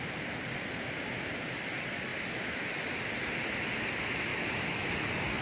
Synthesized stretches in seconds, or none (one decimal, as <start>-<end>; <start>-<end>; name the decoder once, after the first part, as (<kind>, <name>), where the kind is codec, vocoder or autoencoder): 4.3-4.9 (autoencoder, DAC-VAE)

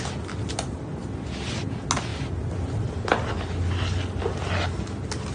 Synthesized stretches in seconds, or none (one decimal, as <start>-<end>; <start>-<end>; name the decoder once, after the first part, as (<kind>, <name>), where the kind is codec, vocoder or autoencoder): none

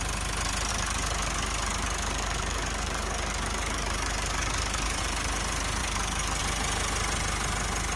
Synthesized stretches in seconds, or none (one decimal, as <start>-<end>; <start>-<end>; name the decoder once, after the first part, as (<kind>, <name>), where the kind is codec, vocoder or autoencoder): 0.7-5.0 (codec, DAC); 5.8-6.4

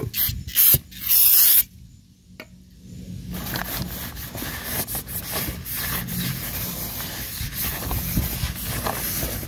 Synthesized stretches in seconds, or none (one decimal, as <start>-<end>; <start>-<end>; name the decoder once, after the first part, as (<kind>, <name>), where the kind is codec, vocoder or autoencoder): none

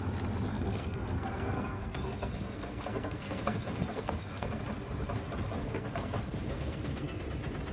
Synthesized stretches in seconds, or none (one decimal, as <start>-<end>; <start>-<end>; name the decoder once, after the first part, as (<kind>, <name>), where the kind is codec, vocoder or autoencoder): 0.5-4.6 (codec, SNAC); 5.6-7.2

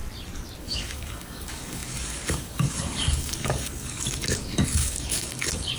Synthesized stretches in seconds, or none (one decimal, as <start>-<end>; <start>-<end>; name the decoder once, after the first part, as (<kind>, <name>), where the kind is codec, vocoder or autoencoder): 0.6-5.8 (codec, DAC)

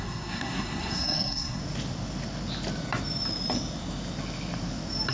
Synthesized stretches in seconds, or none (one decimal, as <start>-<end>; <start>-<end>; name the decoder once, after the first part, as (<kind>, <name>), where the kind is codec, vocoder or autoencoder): 0.0-1.6 (codec, SNAC)

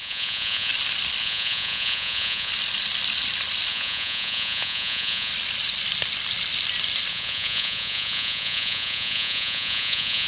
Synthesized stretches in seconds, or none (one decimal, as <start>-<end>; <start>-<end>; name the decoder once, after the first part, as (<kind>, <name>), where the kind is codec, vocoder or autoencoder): 0.0-0.7 (vocoder, Vocos); 1.2-2.5; 3.7-5.3; 7.1-10.3